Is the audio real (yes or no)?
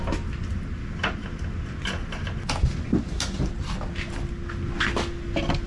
yes